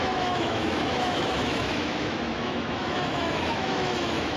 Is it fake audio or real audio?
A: fake